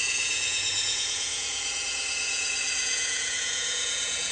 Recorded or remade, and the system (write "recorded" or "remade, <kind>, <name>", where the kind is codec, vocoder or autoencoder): remade, vocoder, Vocos